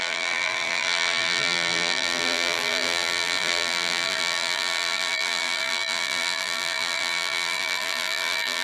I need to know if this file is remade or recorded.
remade